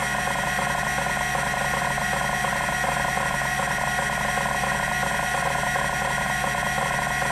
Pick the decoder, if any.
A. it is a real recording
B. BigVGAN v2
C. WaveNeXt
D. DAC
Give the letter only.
A